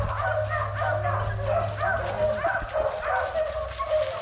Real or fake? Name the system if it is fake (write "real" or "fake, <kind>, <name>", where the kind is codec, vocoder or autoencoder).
real